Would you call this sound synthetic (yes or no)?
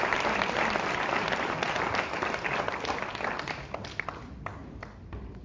no